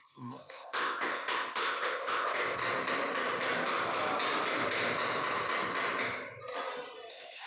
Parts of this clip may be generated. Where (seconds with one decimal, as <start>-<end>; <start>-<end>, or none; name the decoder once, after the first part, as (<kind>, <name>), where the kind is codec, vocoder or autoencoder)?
0.0-2.6 (codec, ZipCodec); 7.1-7.5